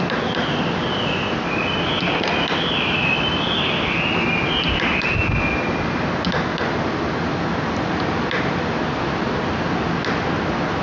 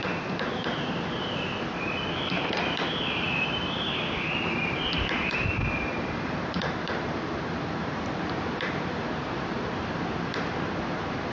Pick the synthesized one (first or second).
second